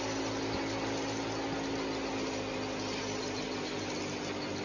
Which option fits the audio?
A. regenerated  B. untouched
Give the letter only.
B